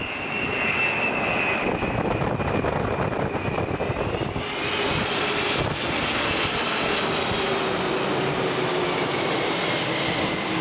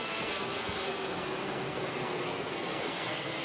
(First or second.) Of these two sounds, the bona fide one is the first